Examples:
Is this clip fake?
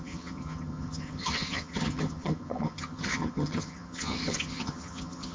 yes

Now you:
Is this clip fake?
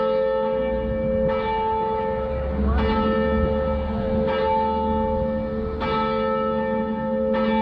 no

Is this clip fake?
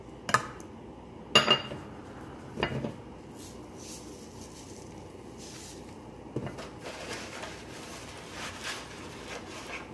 no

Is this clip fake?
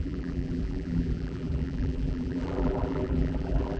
yes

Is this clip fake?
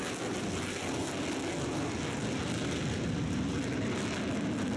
no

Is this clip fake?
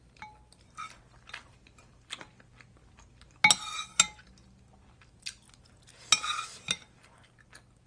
no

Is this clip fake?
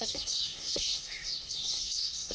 yes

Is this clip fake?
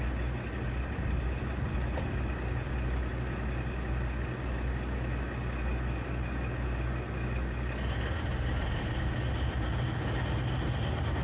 no